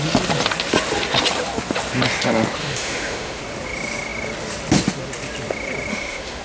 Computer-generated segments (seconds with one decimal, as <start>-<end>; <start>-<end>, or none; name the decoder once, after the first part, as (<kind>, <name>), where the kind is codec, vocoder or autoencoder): 2.6-3.4 (autoencoder, DAC-VAE); 5.9-6.4